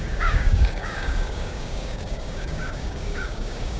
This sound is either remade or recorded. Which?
remade